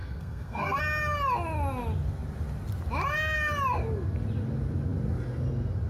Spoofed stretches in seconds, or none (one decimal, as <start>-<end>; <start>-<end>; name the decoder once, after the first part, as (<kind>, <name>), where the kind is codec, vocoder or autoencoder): 0.0-0.8 (codec, SNAC)